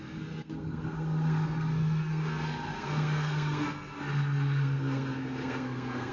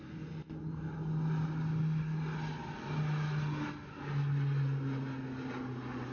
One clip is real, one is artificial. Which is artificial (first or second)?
first